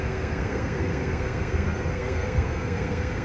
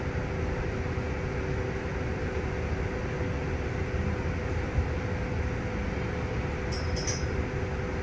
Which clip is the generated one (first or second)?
first